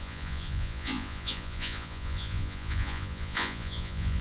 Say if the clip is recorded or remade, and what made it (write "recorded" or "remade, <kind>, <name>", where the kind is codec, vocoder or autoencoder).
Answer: remade, vocoder, Vocos